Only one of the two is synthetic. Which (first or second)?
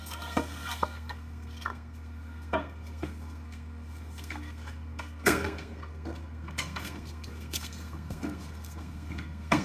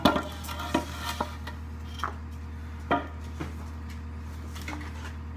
first